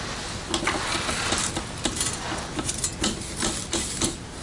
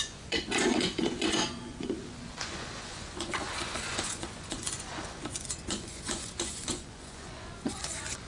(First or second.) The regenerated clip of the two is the second